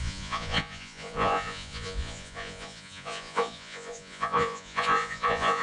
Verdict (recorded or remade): remade